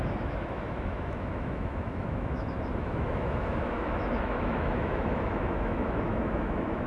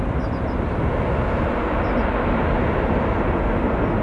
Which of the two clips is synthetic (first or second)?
first